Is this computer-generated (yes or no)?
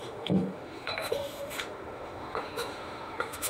yes